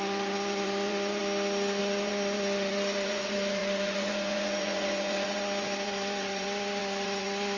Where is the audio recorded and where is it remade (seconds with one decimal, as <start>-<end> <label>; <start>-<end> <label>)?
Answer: 0.0-1.2 remade; 1.2-1.8 recorded; 1.8-7.6 remade